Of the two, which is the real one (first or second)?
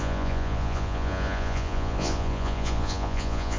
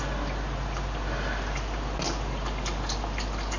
second